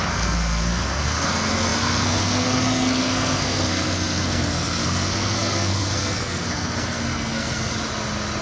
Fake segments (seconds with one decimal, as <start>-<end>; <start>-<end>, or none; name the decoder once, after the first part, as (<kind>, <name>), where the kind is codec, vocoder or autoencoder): 0.0-7.7 (codec, SNAC)

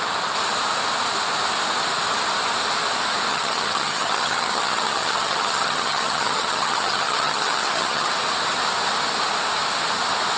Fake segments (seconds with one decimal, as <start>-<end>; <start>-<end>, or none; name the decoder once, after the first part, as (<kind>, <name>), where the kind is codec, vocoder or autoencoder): 3.3-8.1 (vocoder, HiFi-GAN)

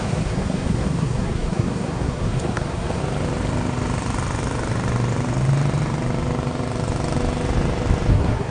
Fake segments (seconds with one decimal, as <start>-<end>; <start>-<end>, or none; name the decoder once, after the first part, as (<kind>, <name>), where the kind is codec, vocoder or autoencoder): 0.0-3.0 (codec, SNAC); 8.1-8.5